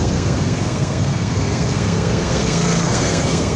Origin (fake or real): fake